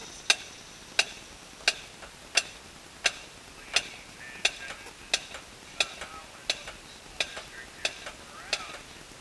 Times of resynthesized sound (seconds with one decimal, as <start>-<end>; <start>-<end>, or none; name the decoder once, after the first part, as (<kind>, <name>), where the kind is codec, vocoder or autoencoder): none